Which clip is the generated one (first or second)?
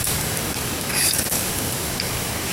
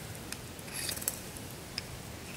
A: first